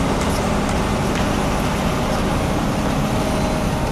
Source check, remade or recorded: recorded